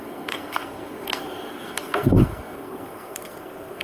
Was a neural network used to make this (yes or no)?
yes